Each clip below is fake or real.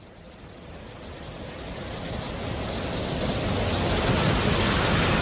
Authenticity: real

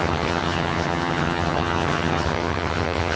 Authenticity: fake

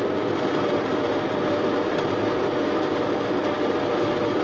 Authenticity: real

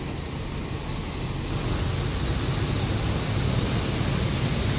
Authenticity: real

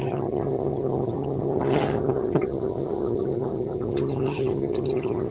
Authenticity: fake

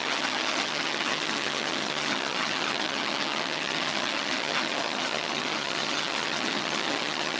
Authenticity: fake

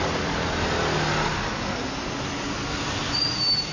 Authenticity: real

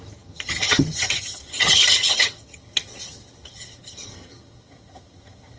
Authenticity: fake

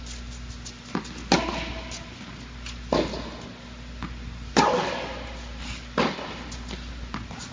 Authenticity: real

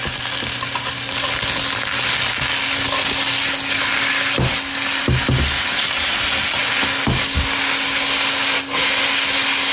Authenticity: real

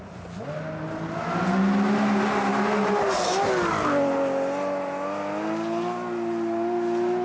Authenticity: real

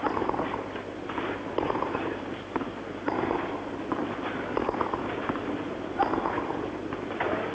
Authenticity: real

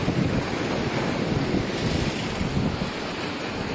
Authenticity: real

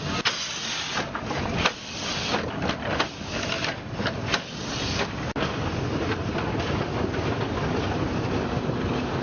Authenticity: real